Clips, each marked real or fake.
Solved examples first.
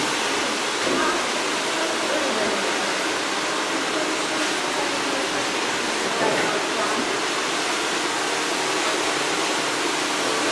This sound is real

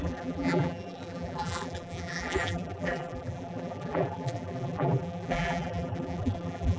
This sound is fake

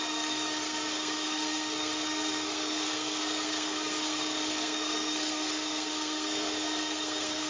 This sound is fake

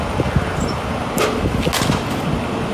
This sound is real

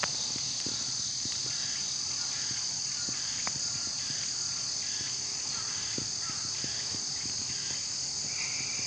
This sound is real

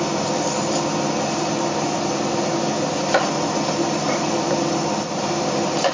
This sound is fake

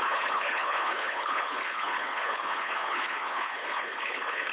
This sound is fake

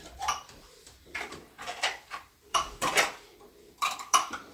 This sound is fake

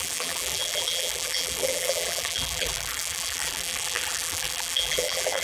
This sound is fake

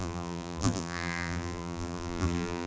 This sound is fake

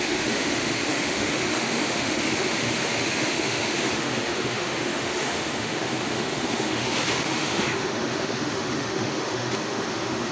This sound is fake